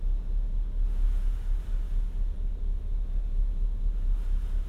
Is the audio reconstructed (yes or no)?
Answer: no